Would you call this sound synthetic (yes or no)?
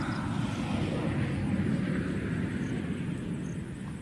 no